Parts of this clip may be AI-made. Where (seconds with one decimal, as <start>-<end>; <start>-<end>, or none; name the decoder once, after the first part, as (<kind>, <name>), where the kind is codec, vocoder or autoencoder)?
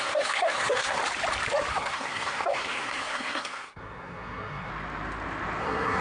0.0-1.0 (codec, SNAC); 1.7-4.7; 5.6-6.0